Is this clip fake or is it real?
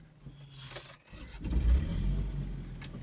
real